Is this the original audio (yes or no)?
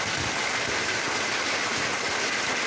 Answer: yes